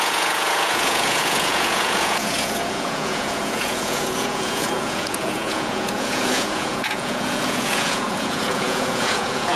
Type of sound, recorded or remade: remade